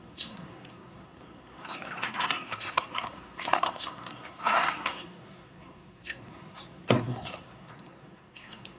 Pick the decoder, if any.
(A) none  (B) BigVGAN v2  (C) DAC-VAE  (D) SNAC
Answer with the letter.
D